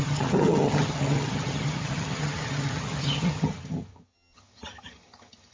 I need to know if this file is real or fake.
fake